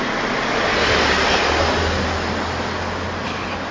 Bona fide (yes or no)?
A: yes